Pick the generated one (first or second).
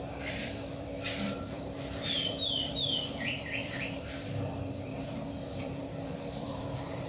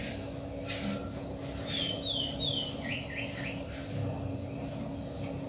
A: first